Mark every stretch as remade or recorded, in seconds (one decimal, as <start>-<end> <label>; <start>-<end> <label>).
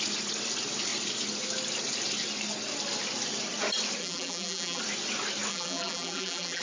0.0-4.0 recorded; 4.0-4.8 remade; 4.8-5.5 recorded; 5.5-6.6 remade